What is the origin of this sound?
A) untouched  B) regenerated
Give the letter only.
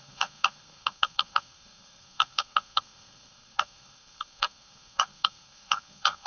B